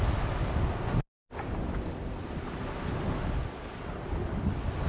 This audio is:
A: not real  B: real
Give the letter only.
B